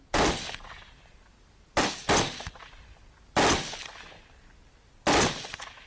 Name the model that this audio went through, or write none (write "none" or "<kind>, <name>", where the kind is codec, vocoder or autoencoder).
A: none